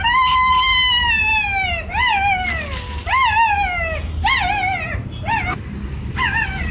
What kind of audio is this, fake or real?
real